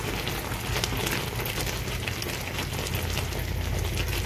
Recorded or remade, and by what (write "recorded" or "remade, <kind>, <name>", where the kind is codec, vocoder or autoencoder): recorded